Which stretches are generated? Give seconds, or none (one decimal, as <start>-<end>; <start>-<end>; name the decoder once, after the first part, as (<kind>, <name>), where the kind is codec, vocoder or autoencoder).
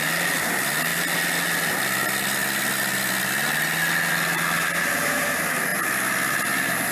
none